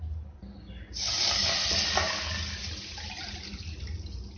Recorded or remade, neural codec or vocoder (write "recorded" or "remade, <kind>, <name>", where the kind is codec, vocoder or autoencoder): recorded